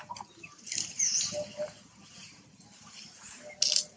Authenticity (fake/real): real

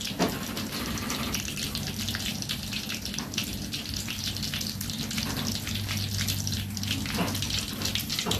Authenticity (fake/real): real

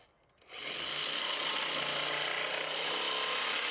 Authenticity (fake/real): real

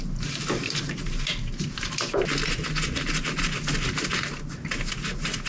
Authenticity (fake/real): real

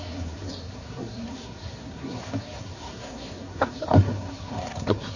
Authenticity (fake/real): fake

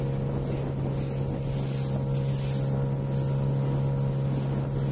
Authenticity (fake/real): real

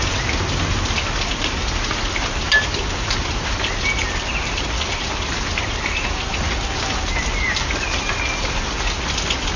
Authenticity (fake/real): real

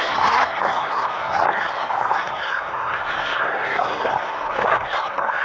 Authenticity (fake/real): fake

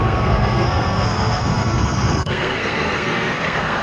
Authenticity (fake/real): fake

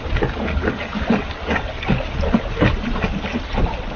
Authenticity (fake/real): real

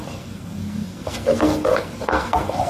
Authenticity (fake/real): fake